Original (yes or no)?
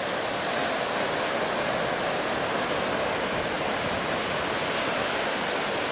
yes